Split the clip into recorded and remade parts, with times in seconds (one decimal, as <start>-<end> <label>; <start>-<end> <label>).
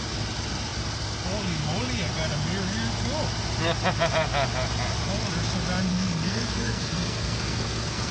0.0-5.9 recorded; 5.9-8.1 remade